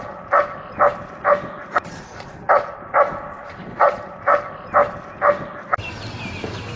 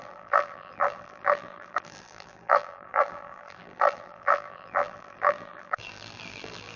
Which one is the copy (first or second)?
second